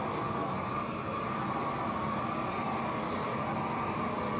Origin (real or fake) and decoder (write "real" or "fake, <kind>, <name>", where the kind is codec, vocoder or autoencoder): real